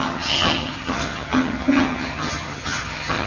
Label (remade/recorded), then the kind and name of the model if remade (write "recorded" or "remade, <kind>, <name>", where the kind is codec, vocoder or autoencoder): remade, vocoder, HiFi-GAN